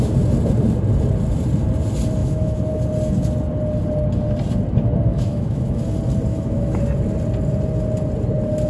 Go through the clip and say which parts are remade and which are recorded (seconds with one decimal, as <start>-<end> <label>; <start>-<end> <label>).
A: 0.0-2.2 recorded; 2.2-2.7 remade; 2.7-5.1 recorded; 5.1-5.8 remade; 5.8-6.3 recorded; 6.3-6.8 remade; 6.8-8.7 recorded